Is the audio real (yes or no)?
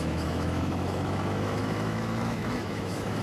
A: no